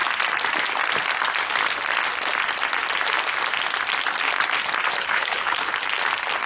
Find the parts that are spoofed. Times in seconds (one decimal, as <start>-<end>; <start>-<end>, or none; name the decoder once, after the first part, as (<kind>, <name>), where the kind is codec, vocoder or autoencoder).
5.0-5.7 (codec, HILCodec)